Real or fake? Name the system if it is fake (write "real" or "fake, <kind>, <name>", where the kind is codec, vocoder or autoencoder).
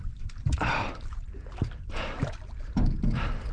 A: fake, vocoder, BigVGAN v2